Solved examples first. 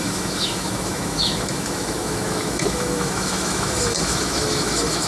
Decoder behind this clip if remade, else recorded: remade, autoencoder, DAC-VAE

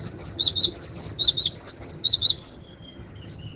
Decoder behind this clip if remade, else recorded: remade, vocoder, HiFi-GAN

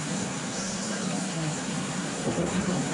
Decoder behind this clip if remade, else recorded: remade, codec, SNAC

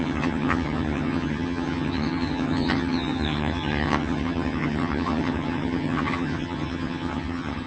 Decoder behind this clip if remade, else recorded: remade, vocoder, HiFi-GAN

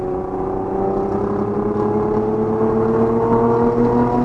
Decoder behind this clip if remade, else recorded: recorded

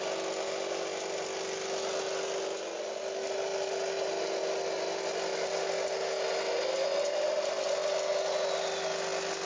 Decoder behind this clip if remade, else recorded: recorded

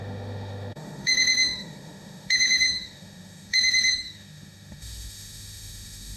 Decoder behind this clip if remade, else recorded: remade, autoencoder, DAC-VAE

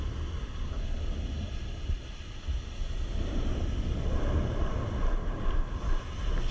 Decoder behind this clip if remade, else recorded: recorded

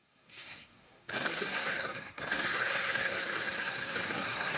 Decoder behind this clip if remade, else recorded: remade, codec, SNAC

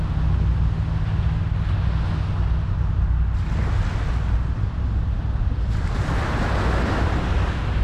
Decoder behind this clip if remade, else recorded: recorded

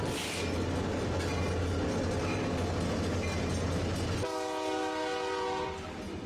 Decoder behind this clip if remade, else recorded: recorded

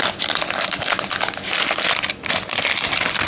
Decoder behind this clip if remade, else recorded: recorded